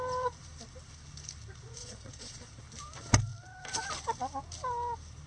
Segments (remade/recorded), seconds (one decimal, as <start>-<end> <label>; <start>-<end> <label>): 0.0-1.8 recorded; 1.8-2.6 remade; 2.6-5.3 recorded